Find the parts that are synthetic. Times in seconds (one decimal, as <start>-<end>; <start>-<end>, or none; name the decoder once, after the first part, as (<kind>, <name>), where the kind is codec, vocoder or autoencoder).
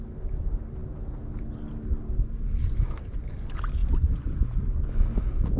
none